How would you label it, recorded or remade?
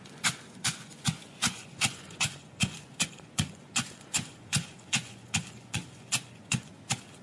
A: remade